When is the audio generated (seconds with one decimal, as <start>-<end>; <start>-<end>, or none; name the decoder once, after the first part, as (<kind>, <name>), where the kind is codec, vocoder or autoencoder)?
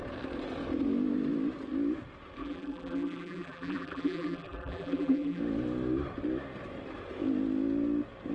2.4-5.4 (vocoder, BigVGAN v2)